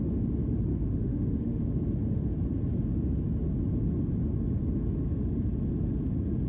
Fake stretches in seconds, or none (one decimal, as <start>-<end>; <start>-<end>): 0.7-1.7